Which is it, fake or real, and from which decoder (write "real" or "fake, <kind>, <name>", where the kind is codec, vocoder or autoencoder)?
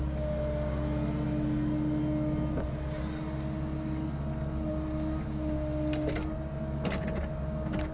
real